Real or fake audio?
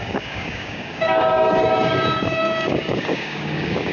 fake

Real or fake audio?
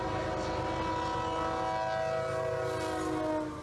real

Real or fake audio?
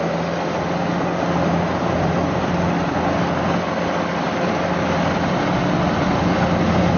real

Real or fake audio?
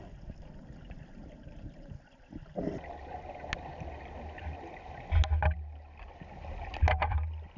real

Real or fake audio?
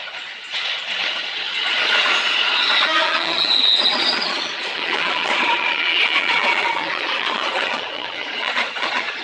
fake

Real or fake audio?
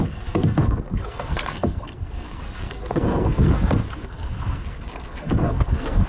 fake